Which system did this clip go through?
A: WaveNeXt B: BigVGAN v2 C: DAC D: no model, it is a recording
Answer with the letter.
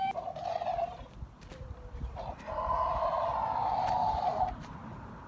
D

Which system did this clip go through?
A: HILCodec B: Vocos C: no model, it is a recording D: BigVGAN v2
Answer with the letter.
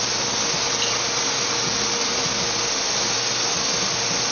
C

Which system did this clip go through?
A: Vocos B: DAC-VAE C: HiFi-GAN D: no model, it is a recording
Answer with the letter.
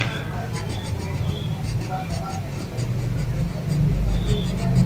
D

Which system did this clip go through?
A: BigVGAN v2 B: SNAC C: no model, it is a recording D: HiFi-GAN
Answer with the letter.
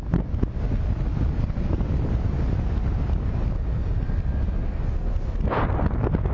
C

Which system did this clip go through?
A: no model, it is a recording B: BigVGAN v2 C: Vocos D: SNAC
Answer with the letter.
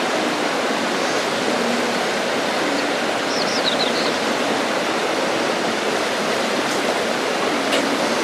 A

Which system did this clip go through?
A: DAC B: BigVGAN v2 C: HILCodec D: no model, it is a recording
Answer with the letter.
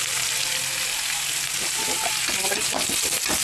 D